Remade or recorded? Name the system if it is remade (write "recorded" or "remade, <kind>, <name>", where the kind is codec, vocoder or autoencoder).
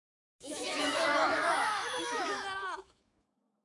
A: remade, autoencoder, DAC-VAE